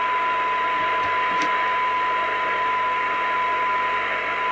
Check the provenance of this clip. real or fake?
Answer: real